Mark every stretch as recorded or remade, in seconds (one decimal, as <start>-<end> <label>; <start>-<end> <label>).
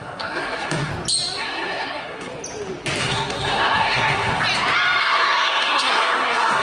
0.0-0.9 remade; 0.9-1.4 recorded; 1.4-2.3 remade; 2.3-3.0 recorded; 3.0-4.3 remade; 4.3-5.0 recorded; 5.0-6.6 remade